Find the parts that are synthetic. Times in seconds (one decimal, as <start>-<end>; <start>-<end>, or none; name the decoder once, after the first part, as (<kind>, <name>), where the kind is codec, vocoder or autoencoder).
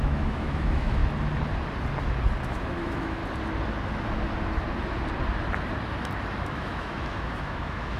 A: 0.0-1.0 (autoencoder, DAC-VAE); 2.4-3.2; 6.4-8.0